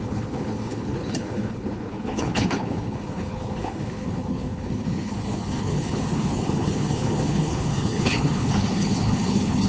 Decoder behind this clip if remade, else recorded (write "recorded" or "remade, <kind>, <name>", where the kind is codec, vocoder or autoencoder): remade, codec, HILCodec